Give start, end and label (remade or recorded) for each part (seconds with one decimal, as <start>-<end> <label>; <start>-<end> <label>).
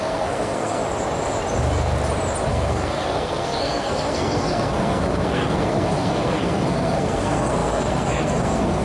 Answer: 0.0-0.8 remade; 0.8-2.5 recorded; 2.5-8.8 remade